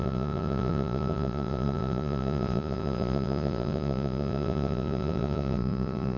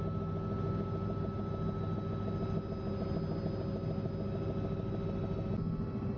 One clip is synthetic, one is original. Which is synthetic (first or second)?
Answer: first